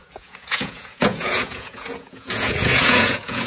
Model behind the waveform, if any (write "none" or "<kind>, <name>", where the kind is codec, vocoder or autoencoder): vocoder, Vocos